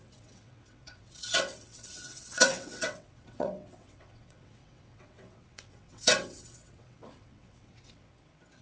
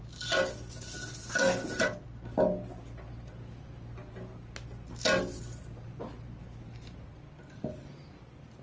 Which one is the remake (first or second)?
first